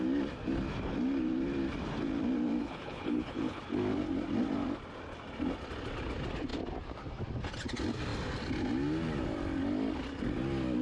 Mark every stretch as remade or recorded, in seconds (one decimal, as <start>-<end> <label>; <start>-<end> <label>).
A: 0.0-2.6 recorded; 2.6-3.6 remade; 3.6-10.8 recorded